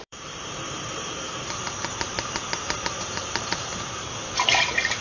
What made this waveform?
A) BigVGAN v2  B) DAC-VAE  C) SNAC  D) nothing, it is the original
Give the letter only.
A